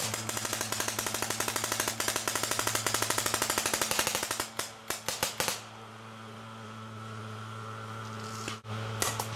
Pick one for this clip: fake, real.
real